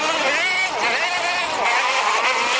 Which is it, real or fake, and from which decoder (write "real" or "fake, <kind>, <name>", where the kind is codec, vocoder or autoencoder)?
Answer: real